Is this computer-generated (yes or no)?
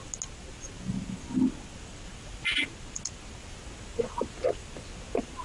no